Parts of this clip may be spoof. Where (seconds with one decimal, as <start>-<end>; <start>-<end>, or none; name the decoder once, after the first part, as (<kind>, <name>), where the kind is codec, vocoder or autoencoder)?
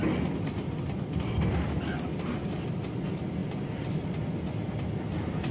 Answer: none